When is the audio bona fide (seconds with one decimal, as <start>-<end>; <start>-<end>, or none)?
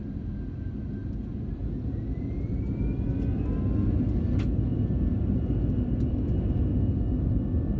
0.0-7.8